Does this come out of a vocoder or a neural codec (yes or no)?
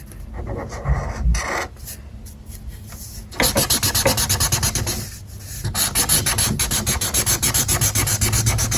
no